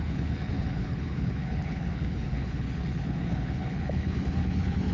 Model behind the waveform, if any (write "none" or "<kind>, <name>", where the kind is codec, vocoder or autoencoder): codec, HILCodec